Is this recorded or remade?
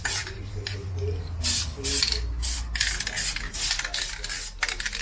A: recorded